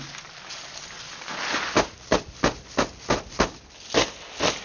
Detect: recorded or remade recorded